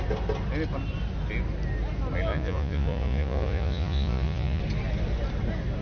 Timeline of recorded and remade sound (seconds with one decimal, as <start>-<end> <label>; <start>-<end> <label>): 0.0-2.3 recorded; 2.3-4.6 remade; 4.6-5.8 recorded